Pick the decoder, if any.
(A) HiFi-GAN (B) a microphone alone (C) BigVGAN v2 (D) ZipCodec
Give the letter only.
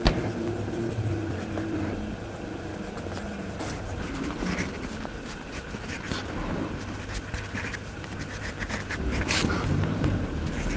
C